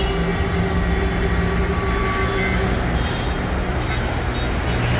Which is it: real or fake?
real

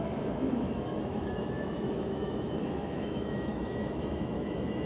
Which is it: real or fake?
fake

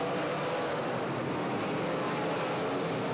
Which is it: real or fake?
real